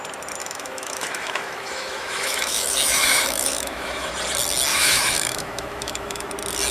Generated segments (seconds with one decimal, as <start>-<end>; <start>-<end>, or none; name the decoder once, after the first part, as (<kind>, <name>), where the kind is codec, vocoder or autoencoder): 0.4-4.1 (autoencoder, DAC-VAE); 4.7-6.3